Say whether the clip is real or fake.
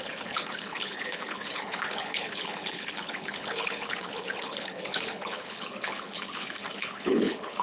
fake